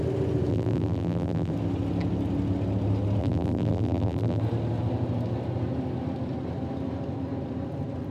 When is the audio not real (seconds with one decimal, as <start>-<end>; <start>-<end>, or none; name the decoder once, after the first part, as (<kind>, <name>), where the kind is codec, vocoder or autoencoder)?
0.5-1.5 (vocoder, BigVGAN v2); 3.2-4.4